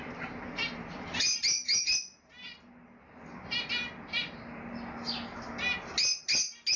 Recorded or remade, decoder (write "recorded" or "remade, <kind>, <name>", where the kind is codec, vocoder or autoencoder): recorded